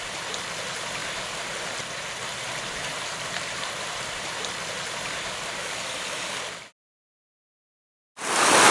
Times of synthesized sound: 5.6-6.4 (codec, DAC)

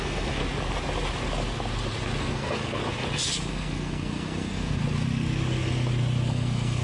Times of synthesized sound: 0.0-0.4 (codec, SNAC); 2.2-2.8; 3.5-4.8; 6.3-6.8

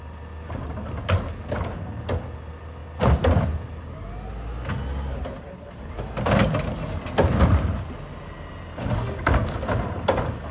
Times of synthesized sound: none

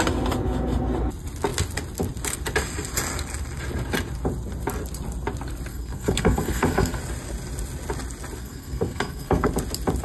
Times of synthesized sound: 5.7-7.0 (codec, SNAC); 8.4-9.5

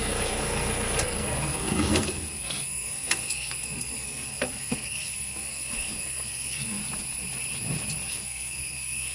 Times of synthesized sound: 0.0-6.8 (codec, SNAC); 8.1-9.1

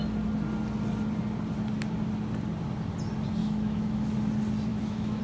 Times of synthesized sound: 3.4-4.2 (autoencoder, DAC-VAE); 4.7-5.2